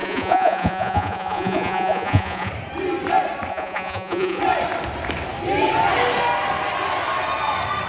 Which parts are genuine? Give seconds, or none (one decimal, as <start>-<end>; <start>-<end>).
2.5-3.5; 4.4-7.9